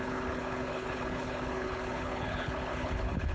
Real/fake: fake